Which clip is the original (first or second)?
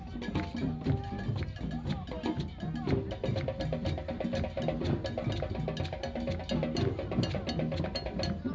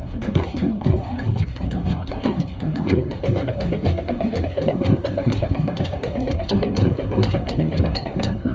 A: first